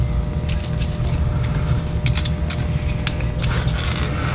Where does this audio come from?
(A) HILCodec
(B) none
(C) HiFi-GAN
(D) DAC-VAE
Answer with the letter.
B